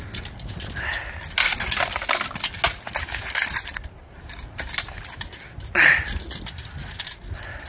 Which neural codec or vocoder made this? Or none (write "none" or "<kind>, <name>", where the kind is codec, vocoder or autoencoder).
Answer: none